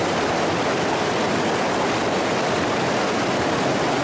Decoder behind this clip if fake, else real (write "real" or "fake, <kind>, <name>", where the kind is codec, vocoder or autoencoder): real